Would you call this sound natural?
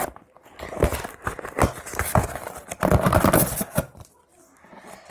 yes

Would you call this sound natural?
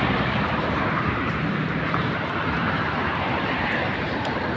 no